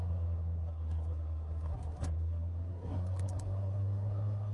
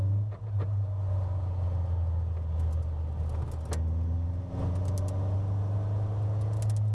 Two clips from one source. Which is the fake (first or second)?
first